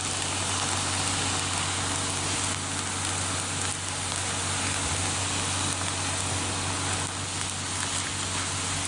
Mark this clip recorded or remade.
recorded